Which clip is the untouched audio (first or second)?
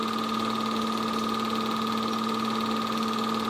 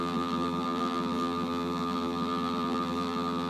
first